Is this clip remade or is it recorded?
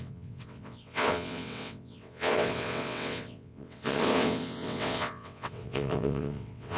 remade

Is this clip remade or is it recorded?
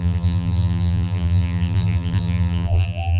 remade